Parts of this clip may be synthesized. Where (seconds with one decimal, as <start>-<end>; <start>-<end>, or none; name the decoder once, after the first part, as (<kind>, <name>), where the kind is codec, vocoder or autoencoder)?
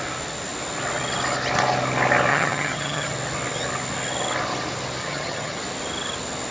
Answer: 2.3-3.1 (vocoder, HiFi-GAN); 5.0-5.6